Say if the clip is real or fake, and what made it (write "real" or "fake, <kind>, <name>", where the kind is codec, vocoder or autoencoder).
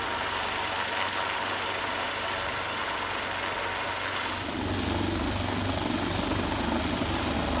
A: real